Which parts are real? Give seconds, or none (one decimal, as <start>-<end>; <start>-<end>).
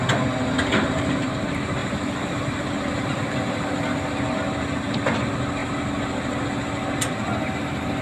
0.0-1.8; 4.1-8.0